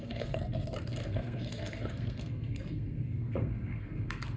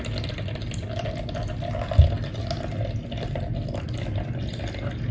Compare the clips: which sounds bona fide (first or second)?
second